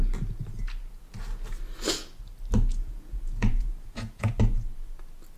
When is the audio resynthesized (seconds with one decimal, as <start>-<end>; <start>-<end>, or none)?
2.7-4.3